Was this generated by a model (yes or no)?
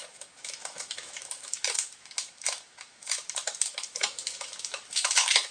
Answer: yes